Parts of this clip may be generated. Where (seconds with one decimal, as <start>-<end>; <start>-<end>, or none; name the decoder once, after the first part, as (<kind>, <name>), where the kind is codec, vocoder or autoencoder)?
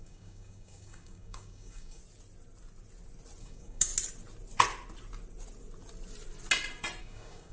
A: 0.0-2.0 (codec, DAC); 3.4-3.9; 7.0-7.5